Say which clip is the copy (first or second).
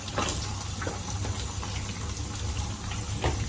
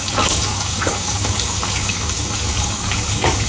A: second